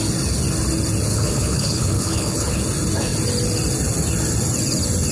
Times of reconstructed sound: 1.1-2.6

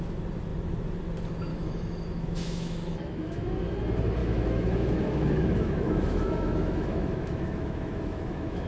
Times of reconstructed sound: 1.5-3.5; 4.2-8.7

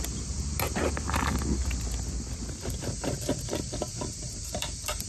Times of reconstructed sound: 3.9-5.1

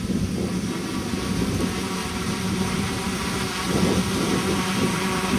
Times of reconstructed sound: 2.0-3.2

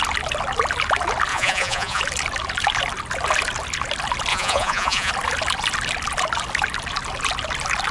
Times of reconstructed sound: 1.3-2.0; 4.3-5.1

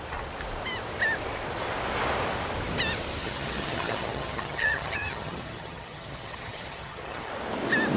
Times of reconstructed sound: 3.2-7.3

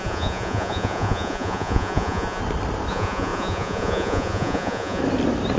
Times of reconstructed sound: 0.0-2.4; 2.9-5.0

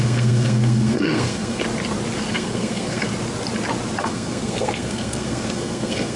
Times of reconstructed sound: 0.0-1.6; 2.3-3.0; 4.0-6.2